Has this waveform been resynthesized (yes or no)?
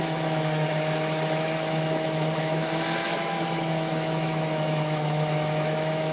yes